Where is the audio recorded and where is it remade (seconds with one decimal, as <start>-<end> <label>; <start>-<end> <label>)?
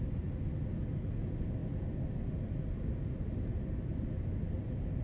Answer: 0.0-5.0 recorded